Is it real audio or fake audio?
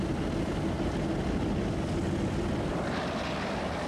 real